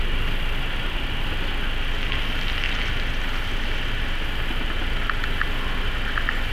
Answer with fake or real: real